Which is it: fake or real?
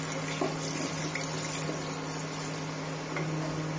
real